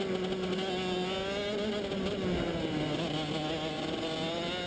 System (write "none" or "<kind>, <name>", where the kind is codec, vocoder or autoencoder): none